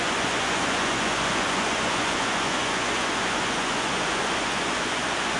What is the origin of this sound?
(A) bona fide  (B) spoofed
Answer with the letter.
B